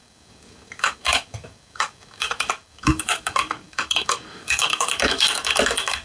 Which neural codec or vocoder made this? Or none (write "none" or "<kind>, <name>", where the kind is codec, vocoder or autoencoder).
codec, DAC